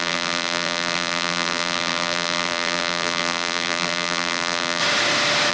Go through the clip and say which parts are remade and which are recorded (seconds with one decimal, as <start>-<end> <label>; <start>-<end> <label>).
0.0-4.8 remade; 4.8-5.5 recorded